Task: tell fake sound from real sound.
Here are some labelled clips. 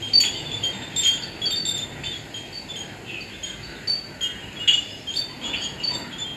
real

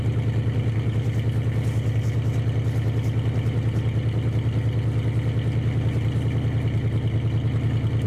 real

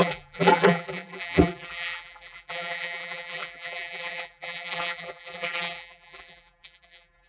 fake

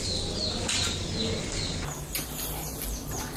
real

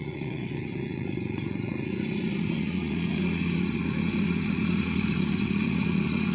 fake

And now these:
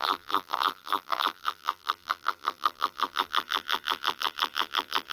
fake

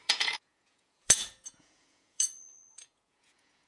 fake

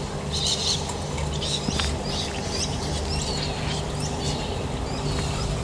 real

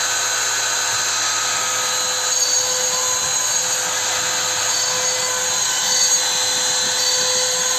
real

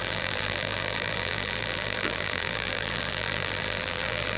fake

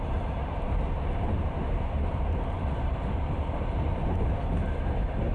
fake